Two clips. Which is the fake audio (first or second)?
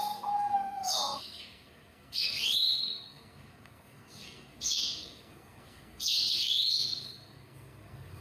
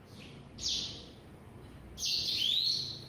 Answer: first